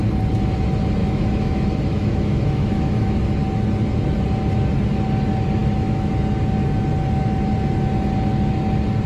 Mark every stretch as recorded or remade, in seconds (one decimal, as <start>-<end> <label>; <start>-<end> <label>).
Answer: 0.0-1.0 recorded; 1.0-3.2 remade; 3.2-5.6 recorded; 5.6-6.1 remade; 6.1-9.1 recorded